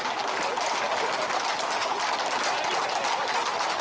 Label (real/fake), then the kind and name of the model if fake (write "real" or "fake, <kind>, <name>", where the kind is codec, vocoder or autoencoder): real